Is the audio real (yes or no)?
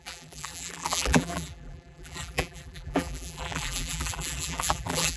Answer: no